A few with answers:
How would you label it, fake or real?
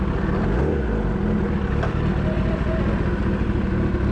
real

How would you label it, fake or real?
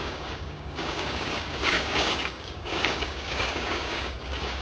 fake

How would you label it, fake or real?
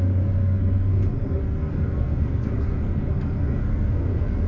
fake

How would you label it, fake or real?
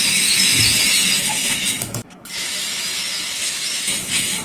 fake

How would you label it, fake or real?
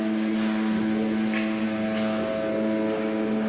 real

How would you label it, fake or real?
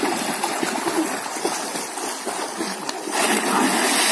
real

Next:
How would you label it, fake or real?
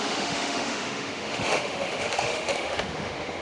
fake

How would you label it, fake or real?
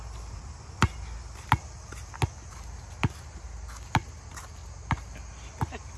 real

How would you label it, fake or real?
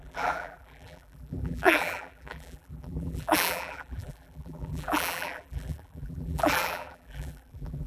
fake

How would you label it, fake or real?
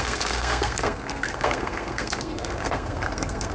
fake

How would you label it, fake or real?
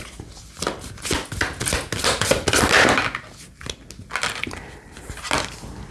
real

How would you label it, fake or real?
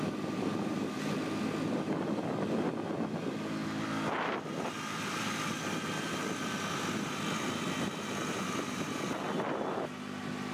real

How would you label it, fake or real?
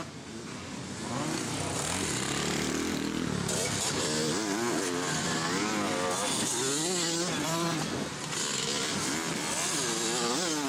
real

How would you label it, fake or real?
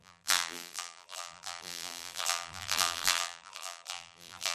fake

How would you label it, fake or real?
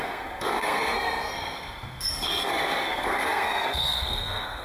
fake